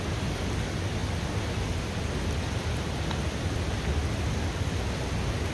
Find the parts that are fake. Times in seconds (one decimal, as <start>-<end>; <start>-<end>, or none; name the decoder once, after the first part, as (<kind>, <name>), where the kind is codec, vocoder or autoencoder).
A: none